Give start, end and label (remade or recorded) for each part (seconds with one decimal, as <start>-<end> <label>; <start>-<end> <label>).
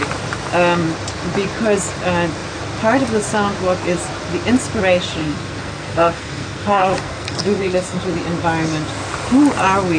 0.0-5.2 recorded; 5.2-8.0 remade; 8.0-10.0 recorded